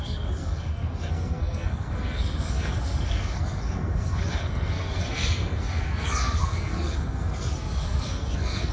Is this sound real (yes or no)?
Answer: no